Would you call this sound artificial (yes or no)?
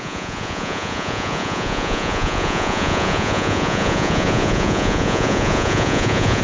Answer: yes